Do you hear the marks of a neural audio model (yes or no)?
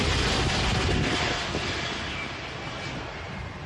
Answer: no